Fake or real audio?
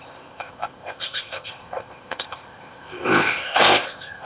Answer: fake